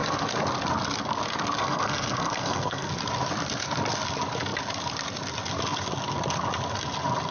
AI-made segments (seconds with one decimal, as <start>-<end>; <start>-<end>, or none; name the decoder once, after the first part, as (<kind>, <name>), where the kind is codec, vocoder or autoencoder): 1.6-2.9 (codec, SNAC)